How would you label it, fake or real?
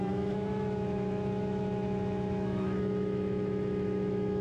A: fake